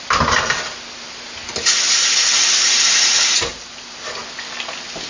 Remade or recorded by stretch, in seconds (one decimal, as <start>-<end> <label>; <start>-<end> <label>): 0.0-5.1 recorded